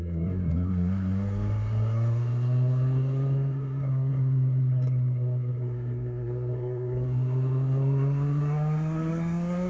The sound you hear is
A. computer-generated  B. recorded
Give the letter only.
A